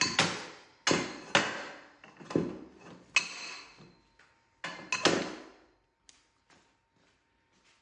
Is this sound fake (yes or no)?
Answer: no